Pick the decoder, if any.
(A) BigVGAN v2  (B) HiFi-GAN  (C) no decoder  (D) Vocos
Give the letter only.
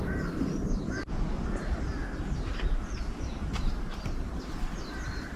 C